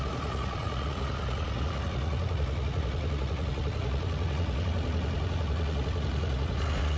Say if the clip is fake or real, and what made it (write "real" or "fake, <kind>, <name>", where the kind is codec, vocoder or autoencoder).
fake, vocoder, Vocos